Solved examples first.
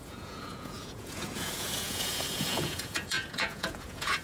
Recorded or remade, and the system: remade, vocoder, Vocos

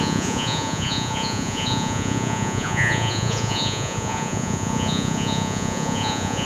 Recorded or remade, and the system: remade, vocoder, Vocos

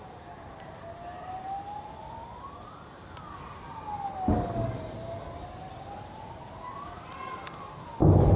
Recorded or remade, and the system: recorded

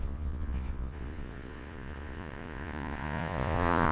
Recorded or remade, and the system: remade, vocoder, Vocos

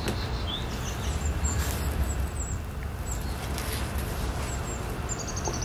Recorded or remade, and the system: recorded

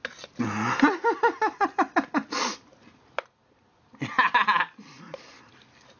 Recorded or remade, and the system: recorded